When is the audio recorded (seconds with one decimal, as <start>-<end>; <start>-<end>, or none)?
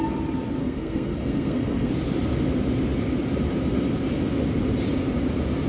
0.0-0.6; 1.9-5.7